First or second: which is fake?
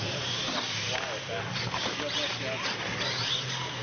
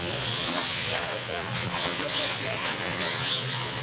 second